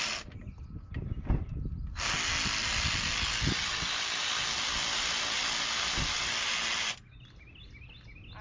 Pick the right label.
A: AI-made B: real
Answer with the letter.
B